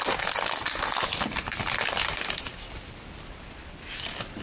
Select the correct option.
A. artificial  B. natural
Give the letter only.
B